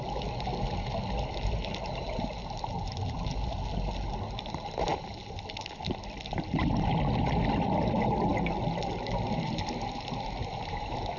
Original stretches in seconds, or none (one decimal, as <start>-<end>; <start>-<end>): 0.0-11.2